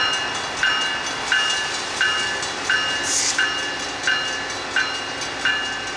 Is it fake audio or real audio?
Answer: real